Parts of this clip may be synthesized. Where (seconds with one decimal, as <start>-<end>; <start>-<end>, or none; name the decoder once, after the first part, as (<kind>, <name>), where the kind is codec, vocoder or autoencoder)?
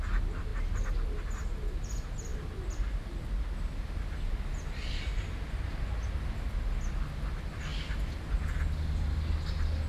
none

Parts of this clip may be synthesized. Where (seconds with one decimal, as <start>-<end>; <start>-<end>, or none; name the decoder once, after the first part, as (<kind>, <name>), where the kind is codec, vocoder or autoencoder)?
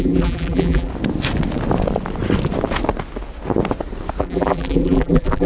0.0-0.9 (vocoder, BigVGAN v2); 4.2-5.5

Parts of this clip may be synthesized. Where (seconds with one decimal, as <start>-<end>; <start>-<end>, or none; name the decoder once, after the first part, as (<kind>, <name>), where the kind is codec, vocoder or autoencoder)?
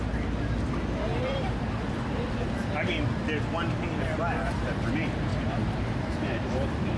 1.1-1.8 (vocoder, BigVGAN v2); 5.3-7.0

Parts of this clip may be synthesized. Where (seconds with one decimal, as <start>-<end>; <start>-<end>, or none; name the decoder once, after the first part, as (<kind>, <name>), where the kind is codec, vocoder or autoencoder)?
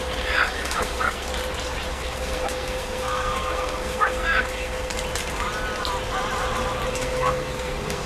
0.0-1.3 (codec, SNAC); 1.9-4.9; 6.9-8.1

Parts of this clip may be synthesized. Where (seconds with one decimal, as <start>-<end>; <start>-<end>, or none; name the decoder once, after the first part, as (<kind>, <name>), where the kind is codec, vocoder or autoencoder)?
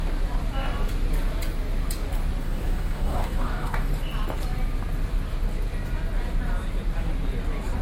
2.4-3.9 (codec, DAC)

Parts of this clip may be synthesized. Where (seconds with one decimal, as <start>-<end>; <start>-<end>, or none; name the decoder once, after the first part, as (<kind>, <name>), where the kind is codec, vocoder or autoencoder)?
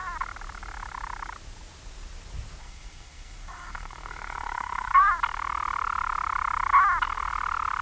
2.6-5.1 (codec, SNAC)